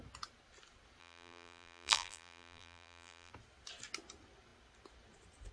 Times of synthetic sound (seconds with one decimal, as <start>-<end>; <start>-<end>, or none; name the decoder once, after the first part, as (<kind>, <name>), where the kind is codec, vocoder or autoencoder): 1.0-3.3 (vocoder, BigVGAN v2)